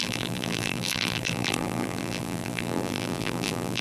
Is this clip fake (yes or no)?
yes